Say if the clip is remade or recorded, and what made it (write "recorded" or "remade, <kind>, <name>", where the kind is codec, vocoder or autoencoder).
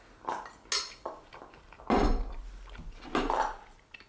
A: recorded